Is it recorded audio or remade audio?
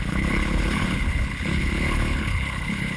remade